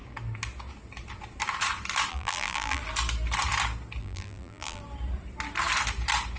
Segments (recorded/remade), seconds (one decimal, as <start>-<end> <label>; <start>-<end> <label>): 0.0-2.1 recorded; 2.1-2.8 remade; 2.8-4.0 recorded; 4.0-4.8 remade; 4.8-6.4 recorded